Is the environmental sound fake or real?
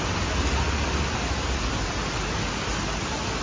real